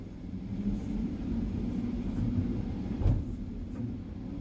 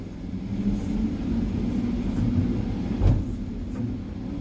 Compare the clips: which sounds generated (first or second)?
first